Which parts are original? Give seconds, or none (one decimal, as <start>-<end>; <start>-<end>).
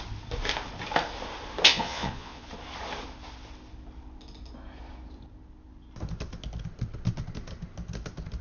0.0-1.7; 2.5-8.4